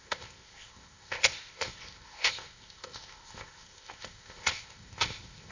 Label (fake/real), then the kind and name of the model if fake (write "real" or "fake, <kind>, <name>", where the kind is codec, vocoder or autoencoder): fake, codec, ZipCodec